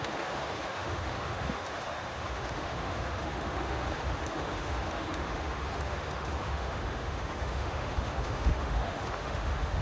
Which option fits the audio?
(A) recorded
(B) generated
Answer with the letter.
B